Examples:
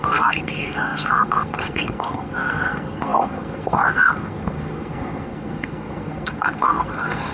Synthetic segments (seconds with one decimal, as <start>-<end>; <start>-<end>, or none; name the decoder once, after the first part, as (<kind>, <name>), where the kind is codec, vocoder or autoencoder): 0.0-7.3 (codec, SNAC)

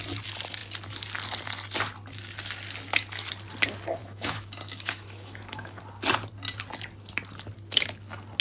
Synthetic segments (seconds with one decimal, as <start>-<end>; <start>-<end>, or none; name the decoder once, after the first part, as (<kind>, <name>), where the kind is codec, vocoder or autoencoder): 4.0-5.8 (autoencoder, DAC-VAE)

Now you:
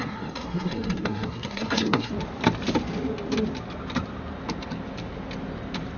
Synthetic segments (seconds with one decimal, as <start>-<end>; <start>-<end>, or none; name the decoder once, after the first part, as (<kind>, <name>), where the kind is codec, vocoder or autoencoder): 0.0-2.1 (codec, SNAC)

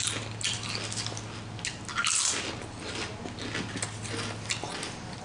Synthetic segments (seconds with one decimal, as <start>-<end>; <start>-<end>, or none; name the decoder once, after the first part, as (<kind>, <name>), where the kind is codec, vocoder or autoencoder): none